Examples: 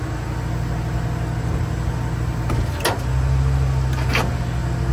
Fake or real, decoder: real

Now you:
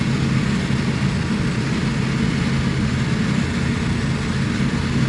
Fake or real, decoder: real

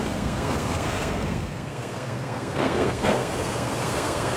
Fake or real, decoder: fake, codec, SNAC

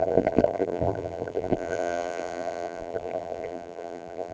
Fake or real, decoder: fake, vocoder, BigVGAN v2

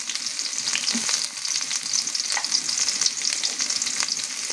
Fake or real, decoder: real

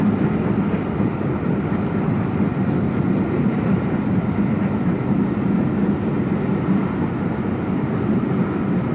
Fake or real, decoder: real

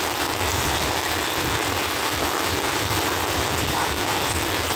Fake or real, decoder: fake, vocoder, BigVGAN v2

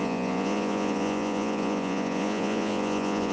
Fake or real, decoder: fake, vocoder, Vocos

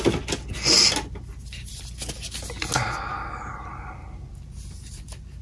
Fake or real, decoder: real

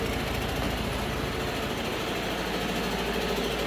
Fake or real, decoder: real